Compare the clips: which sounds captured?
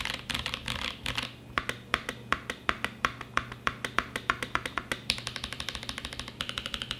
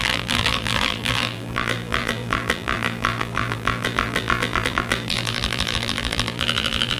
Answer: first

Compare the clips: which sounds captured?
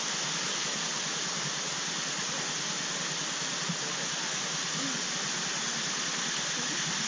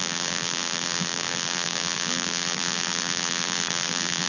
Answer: first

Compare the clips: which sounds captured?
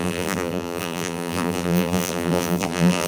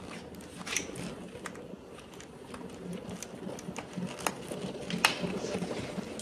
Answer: second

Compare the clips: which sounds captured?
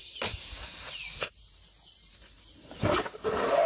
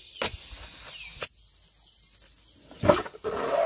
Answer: second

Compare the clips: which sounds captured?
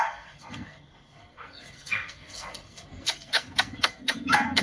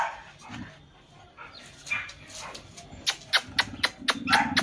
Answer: second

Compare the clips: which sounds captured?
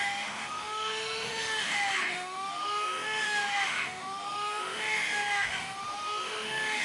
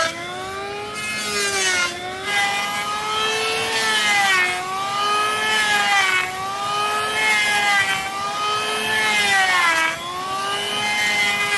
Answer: second